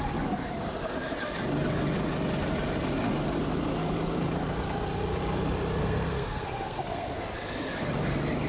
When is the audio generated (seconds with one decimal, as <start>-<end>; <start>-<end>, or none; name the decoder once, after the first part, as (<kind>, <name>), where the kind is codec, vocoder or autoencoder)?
5.8-7.2 (codec, SNAC)